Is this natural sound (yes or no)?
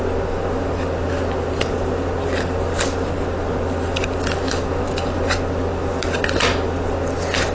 yes